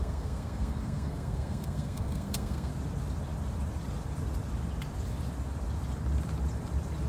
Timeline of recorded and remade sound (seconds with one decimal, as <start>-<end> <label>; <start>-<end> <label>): 0.0-2.7 remade; 2.7-7.1 recorded